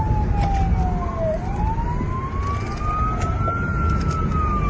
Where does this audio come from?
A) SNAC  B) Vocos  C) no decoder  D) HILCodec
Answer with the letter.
C